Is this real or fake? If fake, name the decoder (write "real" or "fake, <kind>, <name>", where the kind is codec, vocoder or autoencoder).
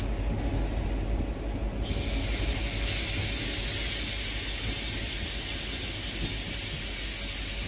real